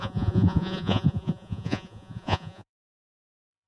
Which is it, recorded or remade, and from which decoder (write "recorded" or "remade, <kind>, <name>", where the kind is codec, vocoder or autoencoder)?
remade, vocoder, Vocos